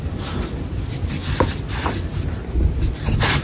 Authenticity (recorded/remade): recorded